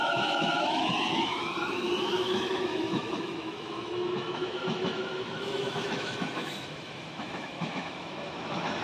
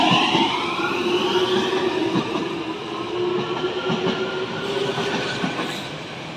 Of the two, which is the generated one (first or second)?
first